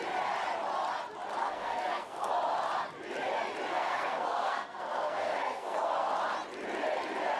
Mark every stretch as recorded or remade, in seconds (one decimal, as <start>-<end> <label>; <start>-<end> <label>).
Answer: 0.0-1.4 recorded; 1.4-2.3 remade; 2.3-3.7 recorded; 3.7-6.1 remade; 6.1-7.4 recorded